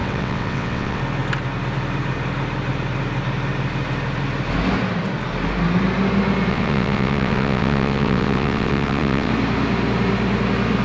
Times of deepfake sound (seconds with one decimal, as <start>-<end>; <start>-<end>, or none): 0.0-1.0; 6.5-9.3